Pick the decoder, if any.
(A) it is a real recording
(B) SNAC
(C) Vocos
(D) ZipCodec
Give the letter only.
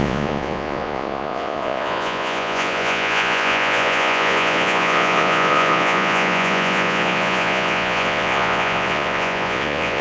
C